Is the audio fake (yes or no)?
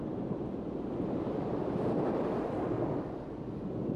no